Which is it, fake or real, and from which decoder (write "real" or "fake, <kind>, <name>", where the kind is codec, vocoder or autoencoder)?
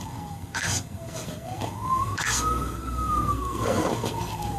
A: fake, codec, SNAC